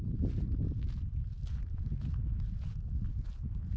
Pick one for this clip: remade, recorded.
recorded